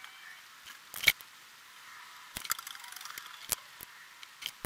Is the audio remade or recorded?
recorded